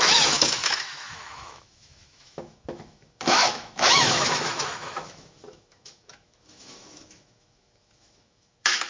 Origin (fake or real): fake